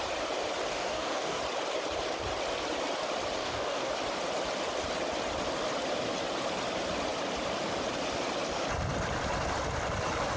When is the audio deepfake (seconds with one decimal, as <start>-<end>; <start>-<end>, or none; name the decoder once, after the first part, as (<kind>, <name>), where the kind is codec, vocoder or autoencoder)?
0.7-1.4 (codec, DAC); 3.4-3.9